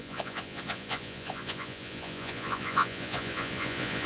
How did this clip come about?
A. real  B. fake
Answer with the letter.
B